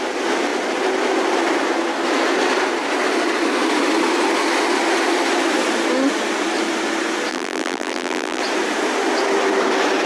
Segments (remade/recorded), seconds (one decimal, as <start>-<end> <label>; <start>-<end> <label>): 0.0-7.3 recorded; 7.3-8.4 remade; 8.4-10.1 recorded